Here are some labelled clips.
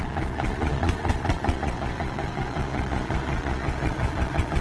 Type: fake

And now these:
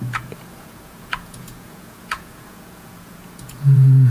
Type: fake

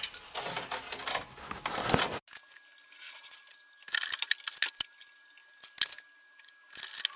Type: real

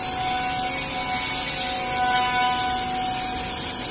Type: real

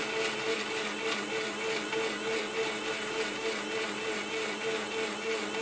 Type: real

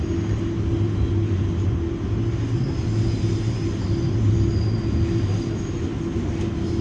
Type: real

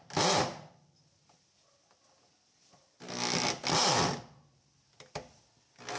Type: real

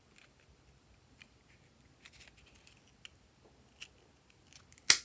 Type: real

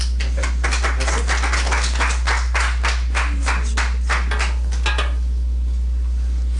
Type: real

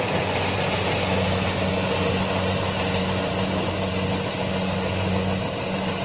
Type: real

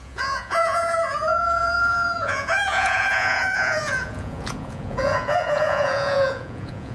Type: fake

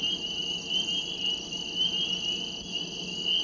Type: real